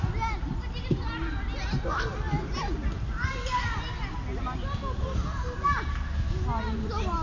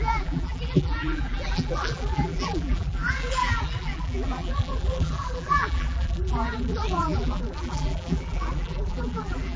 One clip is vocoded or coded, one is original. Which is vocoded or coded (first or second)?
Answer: second